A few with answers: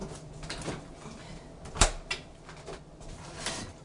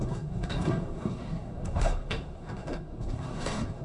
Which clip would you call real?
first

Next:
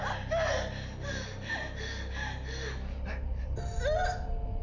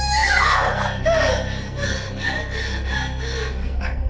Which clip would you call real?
first